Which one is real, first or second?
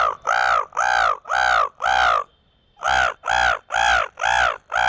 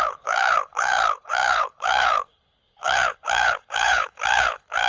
first